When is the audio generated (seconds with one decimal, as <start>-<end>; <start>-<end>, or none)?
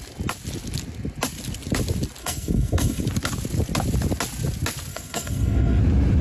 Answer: 2.2-3.0; 4.9-5.8